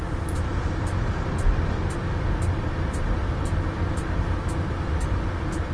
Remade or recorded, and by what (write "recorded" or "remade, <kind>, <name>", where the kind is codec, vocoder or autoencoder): recorded